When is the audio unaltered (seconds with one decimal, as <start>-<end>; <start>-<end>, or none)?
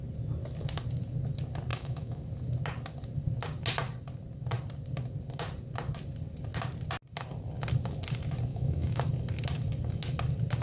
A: 0.0-1.7; 2.2-8.5; 9.1-10.6